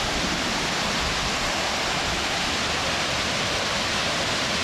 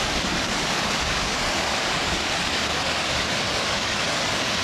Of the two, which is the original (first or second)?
first